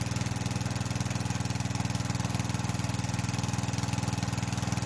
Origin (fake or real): real